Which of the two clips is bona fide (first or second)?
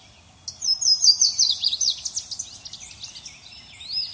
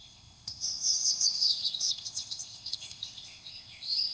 first